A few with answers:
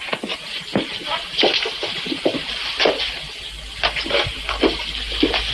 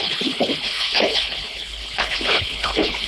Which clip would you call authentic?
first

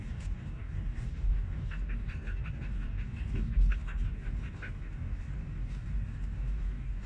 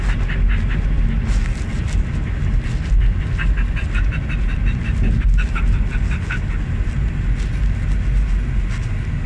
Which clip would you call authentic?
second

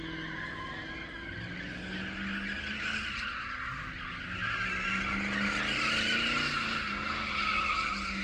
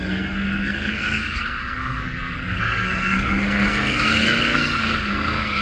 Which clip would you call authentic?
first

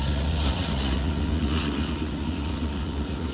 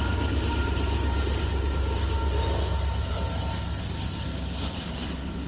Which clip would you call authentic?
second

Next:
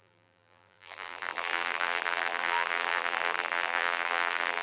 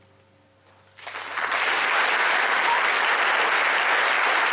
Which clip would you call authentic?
second